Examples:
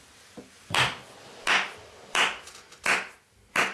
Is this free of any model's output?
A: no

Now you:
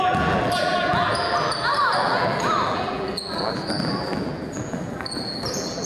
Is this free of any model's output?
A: no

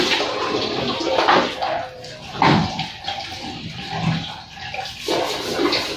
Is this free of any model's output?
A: yes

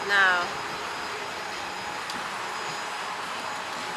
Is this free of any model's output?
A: yes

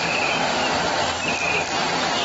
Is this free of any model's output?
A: yes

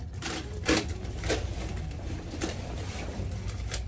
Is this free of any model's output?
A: no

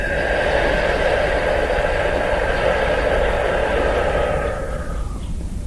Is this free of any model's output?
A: yes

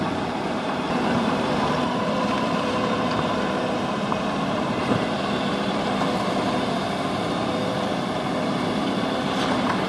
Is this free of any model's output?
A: no